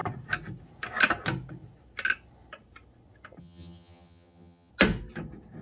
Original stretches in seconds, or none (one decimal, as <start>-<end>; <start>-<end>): 0.0-3.4; 4.7-5.6